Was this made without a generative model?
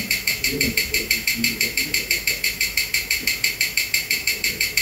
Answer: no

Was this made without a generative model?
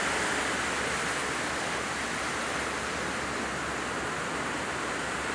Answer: yes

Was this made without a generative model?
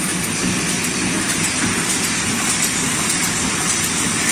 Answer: yes